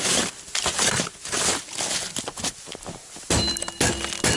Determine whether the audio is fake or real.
real